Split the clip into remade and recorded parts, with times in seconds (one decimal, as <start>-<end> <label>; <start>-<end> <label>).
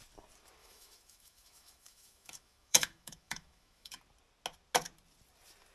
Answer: 0.0-0.6 recorded; 0.6-4.0 remade; 4.0-5.7 recorded